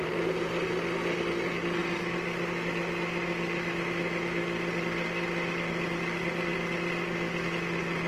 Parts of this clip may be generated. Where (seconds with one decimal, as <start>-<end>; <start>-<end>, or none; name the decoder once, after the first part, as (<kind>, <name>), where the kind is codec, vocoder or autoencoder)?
none